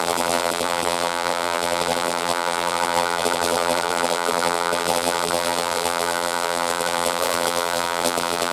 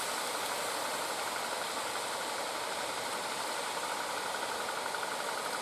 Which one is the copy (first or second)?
first